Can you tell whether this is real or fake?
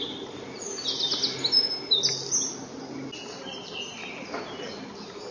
real